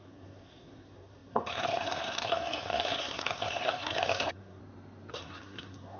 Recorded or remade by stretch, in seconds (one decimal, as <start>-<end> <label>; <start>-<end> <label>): 0.0-4.6 remade; 4.6-5.1 recorded; 5.1-6.0 remade